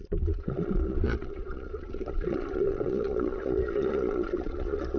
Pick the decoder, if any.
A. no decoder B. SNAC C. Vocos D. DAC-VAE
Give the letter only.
C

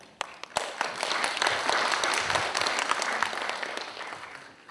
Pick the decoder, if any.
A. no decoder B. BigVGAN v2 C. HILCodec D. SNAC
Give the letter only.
A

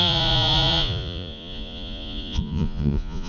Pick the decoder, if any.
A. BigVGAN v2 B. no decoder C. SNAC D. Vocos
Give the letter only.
D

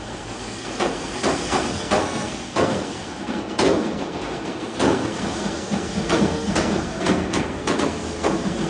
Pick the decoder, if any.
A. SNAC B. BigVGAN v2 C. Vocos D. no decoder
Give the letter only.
A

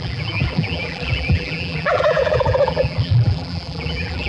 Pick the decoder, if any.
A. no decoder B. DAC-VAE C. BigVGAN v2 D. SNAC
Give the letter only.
C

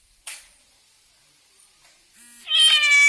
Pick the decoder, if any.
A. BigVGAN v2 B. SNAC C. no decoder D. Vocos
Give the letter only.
C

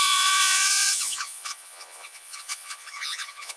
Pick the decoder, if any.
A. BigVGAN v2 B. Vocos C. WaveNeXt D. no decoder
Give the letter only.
B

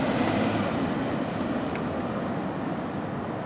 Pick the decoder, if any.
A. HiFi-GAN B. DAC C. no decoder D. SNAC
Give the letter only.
C